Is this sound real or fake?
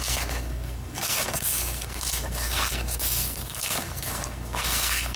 fake